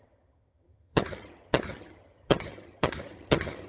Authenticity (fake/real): fake